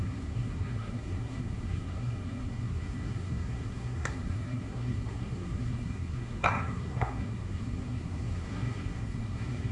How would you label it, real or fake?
fake